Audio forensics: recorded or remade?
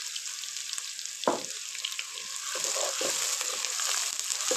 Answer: recorded